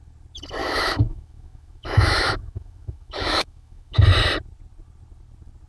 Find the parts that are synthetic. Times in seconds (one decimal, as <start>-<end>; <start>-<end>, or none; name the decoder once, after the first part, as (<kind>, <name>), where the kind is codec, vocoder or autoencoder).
0.6-4.0 (autoencoder, DAC-VAE)